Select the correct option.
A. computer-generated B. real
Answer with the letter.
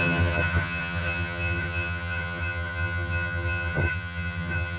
A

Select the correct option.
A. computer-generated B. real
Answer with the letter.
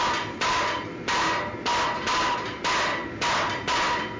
B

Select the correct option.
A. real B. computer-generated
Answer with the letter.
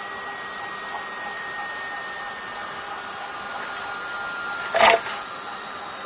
A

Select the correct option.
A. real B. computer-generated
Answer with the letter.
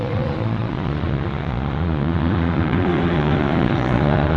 B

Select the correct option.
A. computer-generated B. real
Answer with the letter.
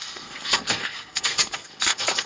A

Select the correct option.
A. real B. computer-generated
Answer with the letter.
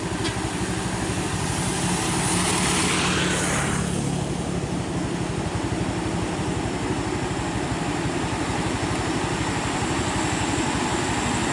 A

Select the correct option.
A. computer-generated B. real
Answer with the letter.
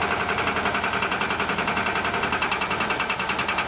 B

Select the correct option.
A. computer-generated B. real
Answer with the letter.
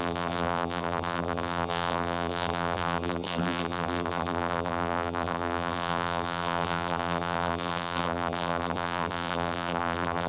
A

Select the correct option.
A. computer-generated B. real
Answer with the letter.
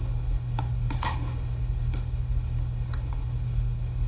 A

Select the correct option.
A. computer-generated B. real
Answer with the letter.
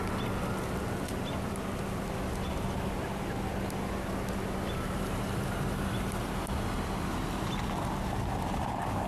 B